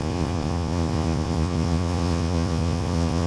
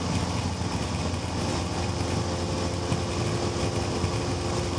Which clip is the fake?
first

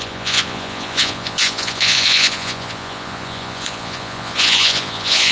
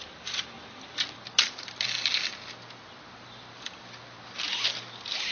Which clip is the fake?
first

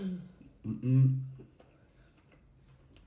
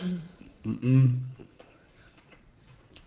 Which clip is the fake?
second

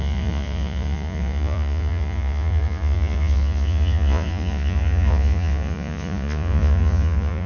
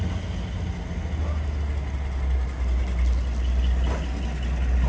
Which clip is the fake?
first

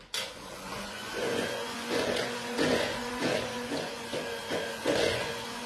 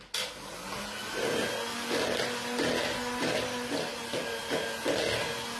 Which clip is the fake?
first